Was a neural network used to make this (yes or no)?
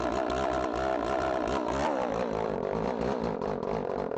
yes